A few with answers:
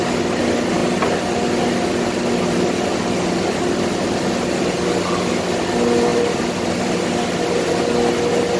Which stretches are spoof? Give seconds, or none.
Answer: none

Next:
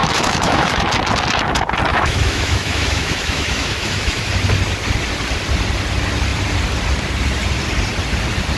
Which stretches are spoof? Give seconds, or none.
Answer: 0.0-0.8 (autoencoder, DAC-VAE); 1.9-4.3

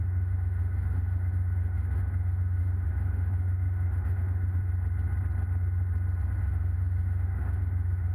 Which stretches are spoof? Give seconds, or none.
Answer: 0.0-4.6 (autoencoder, DAC-VAE); 6.4-8.1

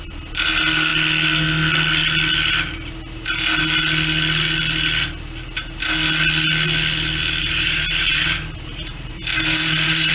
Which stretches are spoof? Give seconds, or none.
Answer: 7.4-10.1 (vocoder, BigVGAN v2)

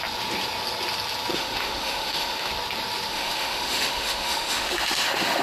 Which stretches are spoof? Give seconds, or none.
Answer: 1.3-2.5 (autoencoder, DAC-VAE); 3.1-5.4

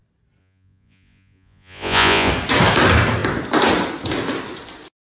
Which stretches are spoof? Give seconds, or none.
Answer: 0.4-2.3 (vocoder, Vocos)

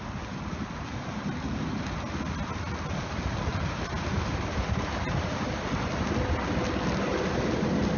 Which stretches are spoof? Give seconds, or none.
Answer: none

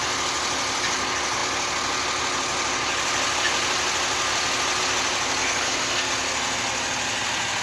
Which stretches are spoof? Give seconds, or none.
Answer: 5.4-6.1 (codec, SNAC)